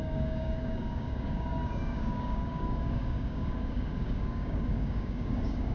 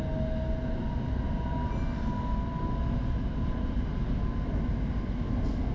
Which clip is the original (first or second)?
second